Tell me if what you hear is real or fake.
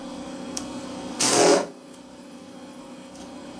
fake